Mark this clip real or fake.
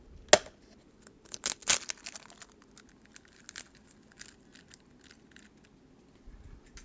real